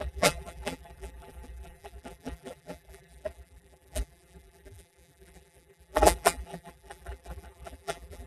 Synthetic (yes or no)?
yes